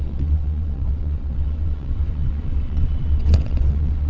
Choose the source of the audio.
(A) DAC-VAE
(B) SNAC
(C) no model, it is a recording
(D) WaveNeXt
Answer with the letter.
D